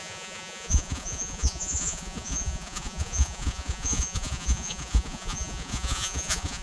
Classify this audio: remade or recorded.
remade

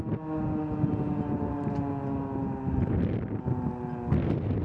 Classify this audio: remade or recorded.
recorded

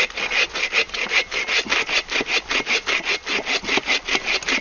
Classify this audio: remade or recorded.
recorded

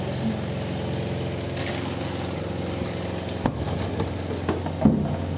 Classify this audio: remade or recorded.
recorded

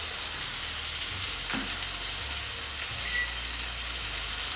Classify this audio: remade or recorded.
recorded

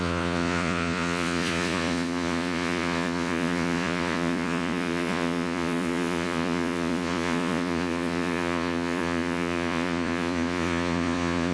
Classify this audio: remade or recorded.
remade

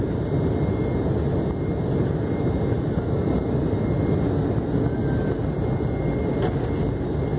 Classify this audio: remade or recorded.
recorded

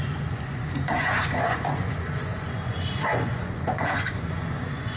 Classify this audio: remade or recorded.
remade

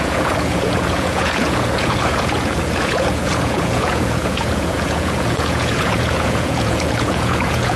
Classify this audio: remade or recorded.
remade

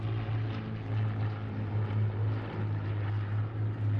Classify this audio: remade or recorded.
recorded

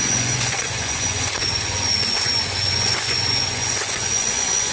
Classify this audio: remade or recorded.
remade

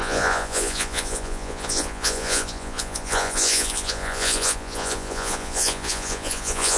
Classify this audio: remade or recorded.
remade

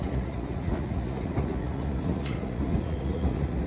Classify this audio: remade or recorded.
remade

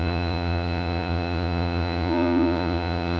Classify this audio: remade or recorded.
remade